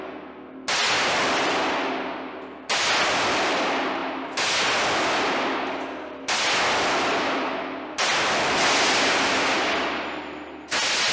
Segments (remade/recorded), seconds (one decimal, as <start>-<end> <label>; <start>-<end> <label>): 0.0-11.1 recorded